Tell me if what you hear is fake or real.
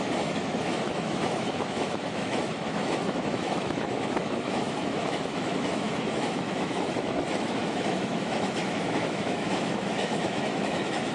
fake